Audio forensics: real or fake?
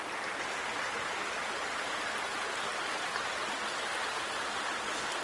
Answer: real